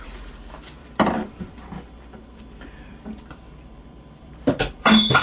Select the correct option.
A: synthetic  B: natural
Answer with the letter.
A